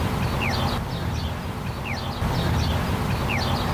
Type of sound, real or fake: real